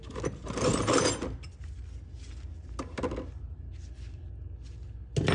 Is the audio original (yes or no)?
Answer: yes